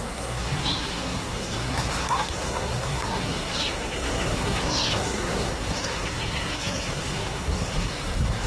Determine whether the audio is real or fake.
fake